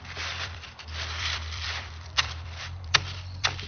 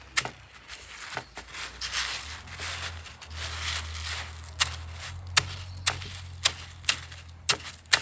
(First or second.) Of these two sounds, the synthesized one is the first